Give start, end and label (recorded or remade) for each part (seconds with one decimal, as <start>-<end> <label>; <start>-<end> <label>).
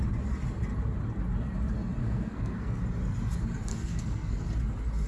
0.0-2.0 recorded; 2.0-2.8 remade; 2.8-3.7 recorded; 3.7-4.4 remade; 4.4-5.1 recorded